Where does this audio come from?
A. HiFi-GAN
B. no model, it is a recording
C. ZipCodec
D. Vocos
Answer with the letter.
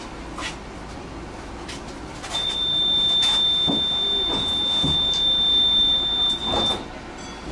B